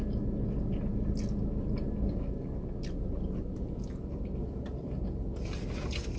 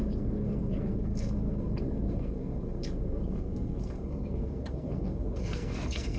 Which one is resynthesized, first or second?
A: second